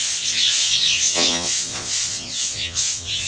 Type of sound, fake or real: fake